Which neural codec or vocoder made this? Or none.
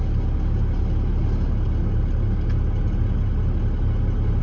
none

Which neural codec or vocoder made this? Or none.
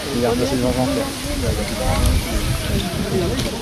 none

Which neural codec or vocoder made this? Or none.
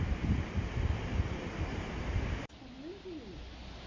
none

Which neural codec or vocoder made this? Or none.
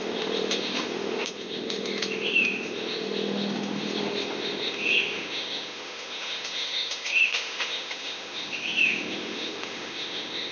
autoencoder, DAC-VAE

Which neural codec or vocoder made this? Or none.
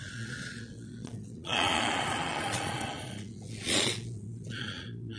vocoder, Vocos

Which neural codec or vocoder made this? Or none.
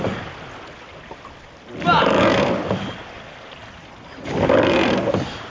none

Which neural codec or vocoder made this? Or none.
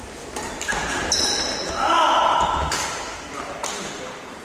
none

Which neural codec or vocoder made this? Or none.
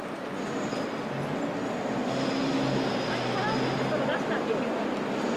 none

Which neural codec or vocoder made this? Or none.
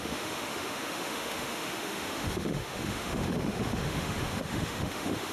autoencoder, DAC-VAE